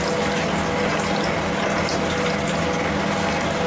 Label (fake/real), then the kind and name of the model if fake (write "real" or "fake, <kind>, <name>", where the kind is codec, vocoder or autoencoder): real